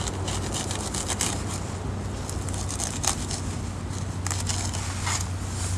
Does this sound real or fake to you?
real